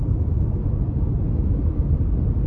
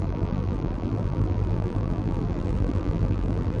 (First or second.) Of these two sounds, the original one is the first